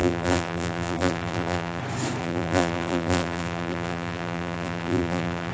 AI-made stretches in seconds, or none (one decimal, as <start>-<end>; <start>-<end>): 0.0-1.8; 2.2-5.5